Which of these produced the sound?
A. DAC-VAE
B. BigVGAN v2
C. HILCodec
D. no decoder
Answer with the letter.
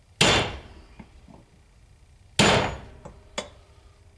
D